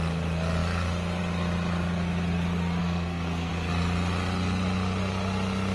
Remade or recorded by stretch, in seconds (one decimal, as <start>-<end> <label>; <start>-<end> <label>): 0.0-2.8 recorded; 2.8-3.5 remade; 3.5-5.7 recorded